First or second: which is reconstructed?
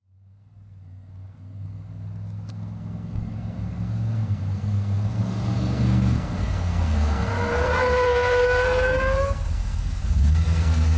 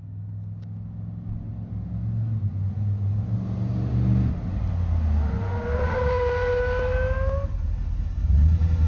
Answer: first